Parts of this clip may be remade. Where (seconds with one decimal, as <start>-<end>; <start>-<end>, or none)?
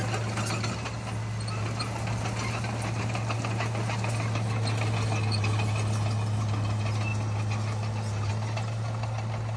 none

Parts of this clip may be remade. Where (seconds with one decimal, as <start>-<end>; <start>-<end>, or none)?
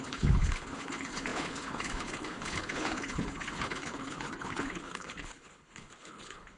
0.0-6.6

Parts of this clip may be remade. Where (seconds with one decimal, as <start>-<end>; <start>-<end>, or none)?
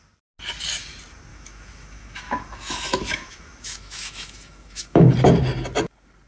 1.3-5.1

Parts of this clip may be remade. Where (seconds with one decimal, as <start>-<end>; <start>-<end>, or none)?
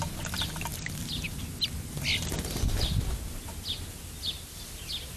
none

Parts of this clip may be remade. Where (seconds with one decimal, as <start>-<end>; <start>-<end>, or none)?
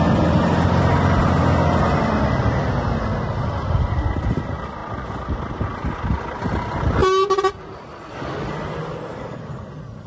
none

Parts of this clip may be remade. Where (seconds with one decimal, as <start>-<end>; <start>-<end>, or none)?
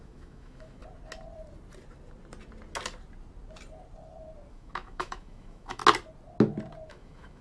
0.0-0.8; 4.5-5.8; 6.9-7.4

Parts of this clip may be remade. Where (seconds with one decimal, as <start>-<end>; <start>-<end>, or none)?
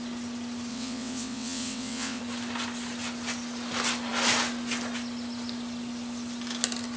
0.7-2.2